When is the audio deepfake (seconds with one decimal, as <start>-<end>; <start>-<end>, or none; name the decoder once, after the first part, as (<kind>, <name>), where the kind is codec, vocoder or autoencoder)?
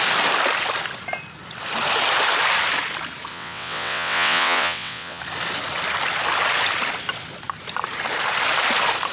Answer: 3.3-5.2 (vocoder, WaveNeXt)